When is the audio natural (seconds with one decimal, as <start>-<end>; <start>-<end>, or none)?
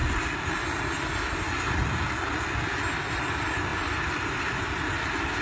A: 0.0-3.7; 4.6-5.4